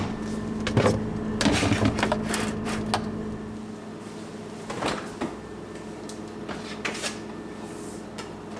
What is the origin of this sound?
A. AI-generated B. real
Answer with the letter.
B